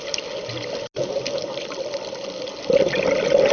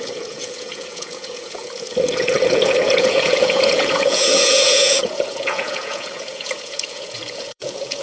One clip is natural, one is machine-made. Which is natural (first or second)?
first